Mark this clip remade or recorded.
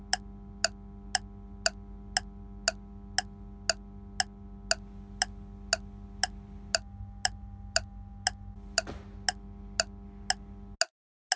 recorded